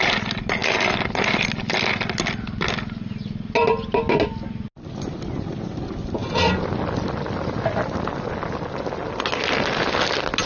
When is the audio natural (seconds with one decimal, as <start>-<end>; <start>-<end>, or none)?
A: 0.0-10.5